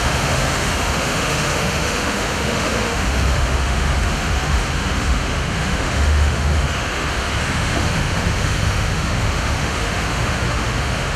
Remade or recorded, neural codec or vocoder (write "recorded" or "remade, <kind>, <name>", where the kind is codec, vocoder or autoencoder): remade, autoencoder, DAC-VAE